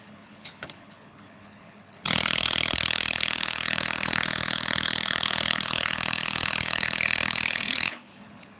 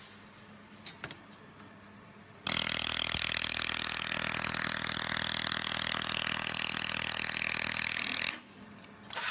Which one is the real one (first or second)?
second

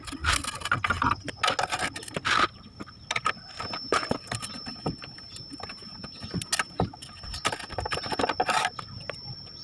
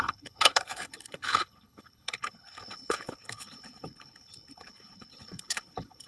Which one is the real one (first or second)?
first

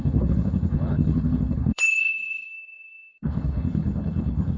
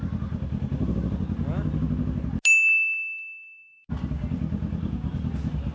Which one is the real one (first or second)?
second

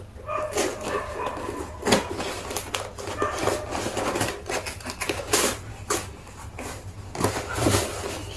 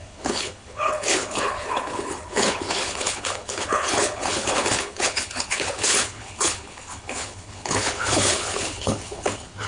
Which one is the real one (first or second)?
first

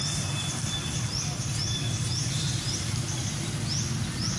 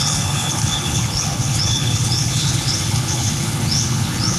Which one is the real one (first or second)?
first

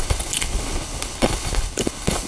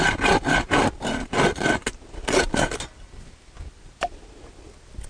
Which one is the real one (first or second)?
second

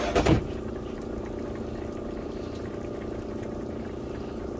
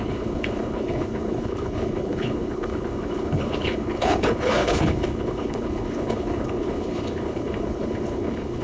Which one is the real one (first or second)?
first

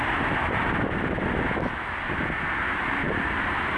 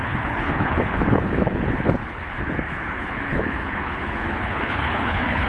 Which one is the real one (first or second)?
first